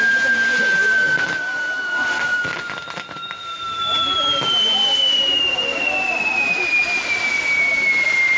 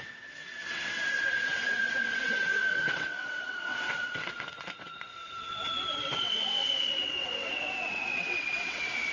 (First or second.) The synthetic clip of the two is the second